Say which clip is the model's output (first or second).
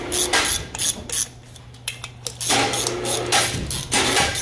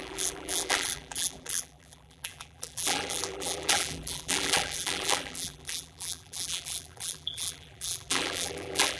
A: second